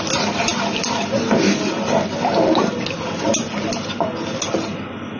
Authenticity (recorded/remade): recorded